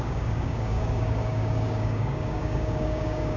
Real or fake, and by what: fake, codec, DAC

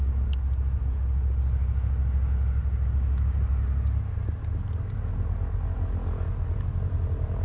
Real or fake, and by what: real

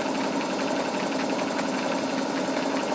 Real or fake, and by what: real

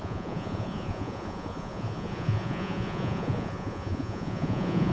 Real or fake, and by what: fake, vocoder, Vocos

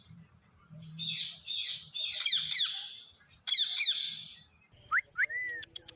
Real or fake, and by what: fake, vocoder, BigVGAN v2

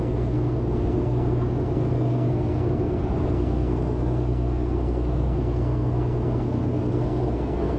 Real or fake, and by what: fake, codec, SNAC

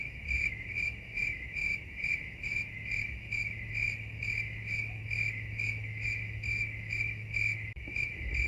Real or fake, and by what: fake, autoencoder, DAC-VAE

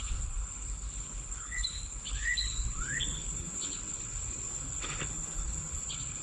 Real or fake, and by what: fake, codec, HILCodec